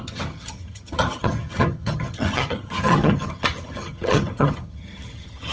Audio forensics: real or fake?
fake